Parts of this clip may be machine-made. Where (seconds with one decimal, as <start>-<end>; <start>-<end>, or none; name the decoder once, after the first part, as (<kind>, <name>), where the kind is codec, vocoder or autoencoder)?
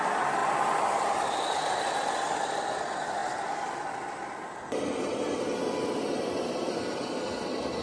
none